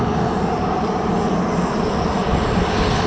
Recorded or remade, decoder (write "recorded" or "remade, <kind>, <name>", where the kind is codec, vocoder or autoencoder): recorded